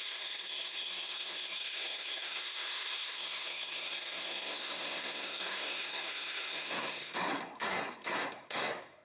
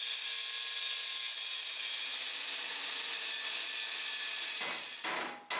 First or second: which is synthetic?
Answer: first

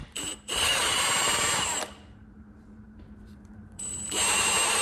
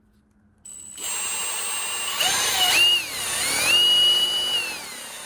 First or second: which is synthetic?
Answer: first